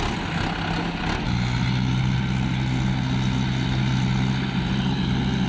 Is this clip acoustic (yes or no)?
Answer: yes